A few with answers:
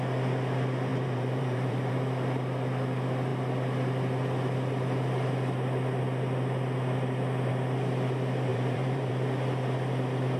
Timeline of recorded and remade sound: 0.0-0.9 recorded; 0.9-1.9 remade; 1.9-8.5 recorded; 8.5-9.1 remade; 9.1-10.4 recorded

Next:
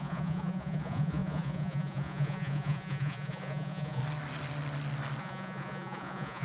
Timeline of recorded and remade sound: 0.0-4.0 remade; 4.0-5.2 recorded; 5.2-6.4 remade

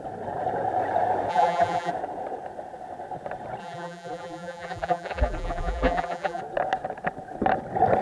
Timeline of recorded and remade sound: 0.0-1.3 recorded; 1.3-1.9 remade; 1.9-3.6 recorded; 3.6-6.4 remade; 6.4-8.0 recorded

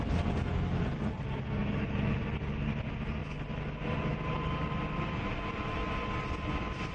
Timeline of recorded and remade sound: 0.0-1.6 recorded; 1.6-2.2 remade; 2.2-6.9 recorded

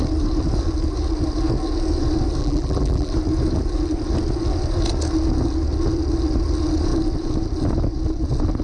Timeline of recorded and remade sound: 0.0-2.4 recorded; 2.4-3.1 remade; 3.1-8.6 recorded

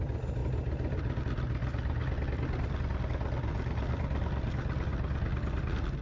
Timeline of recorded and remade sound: 0.0-6.0 recorded